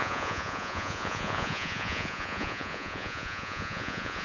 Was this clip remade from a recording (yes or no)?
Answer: yes